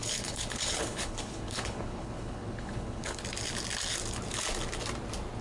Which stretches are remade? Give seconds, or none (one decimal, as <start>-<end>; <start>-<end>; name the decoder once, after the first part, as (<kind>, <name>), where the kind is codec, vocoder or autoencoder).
0.0-3.2 (codec, HILCodec)